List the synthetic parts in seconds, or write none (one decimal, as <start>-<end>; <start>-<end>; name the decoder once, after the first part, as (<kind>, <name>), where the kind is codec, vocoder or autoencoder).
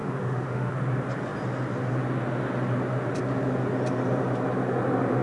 0.0-0.7 (autoencoder, DAC-VAE)